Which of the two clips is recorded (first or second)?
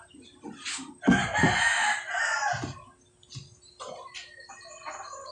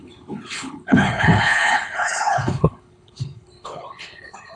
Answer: first